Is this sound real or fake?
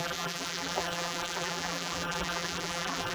fake